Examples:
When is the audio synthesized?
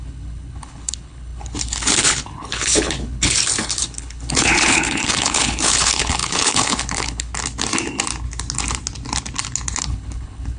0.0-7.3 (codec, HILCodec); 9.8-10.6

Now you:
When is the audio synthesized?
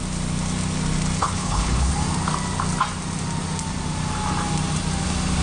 1.2-1.9 (codec, HILCodec)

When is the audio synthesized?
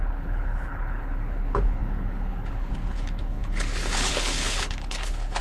0.0-5.4 (codec, HILCodec)